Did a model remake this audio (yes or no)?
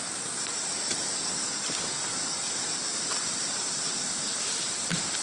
no